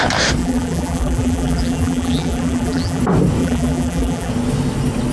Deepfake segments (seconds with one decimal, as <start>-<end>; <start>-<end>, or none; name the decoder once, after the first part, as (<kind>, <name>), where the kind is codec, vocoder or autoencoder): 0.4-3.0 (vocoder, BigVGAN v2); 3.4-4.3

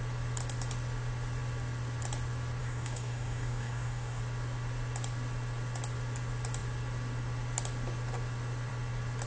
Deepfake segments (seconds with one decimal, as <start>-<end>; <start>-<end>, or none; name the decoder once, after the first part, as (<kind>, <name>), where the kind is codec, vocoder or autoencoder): 2.6-4.2 (codec, DAC)

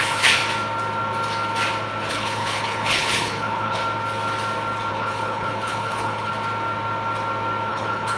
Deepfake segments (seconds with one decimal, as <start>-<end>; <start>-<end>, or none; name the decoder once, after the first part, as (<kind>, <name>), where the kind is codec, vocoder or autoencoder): 0.0-0.4 (codec, HILCodec); 2.1-3.8; 4.9-6.3; 7.7-8.2

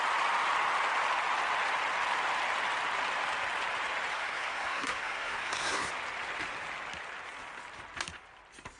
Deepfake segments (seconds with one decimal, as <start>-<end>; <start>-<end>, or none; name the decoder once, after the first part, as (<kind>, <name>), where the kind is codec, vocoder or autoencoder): 4.1-5.9 (codec, SNAC)